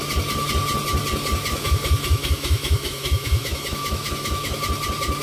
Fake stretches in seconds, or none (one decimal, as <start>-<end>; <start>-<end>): 1.5-4.6